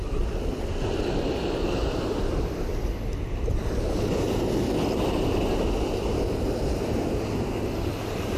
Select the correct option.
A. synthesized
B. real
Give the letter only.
B